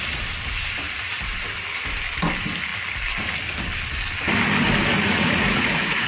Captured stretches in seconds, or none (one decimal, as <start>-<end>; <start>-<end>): 0.0-4.9